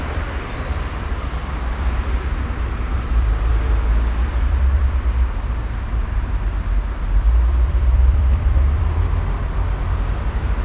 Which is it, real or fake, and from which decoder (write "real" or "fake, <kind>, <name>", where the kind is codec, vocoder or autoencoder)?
fake, vocoder, BigVGAN v2